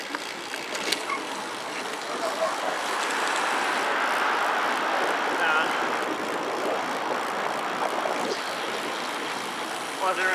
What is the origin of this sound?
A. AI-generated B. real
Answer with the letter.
B